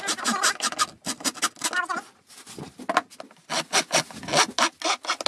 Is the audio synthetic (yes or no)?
no